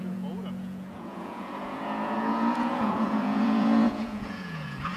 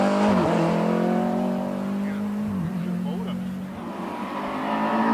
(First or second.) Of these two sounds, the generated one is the first